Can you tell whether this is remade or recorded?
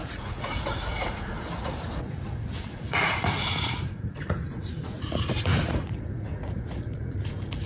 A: remade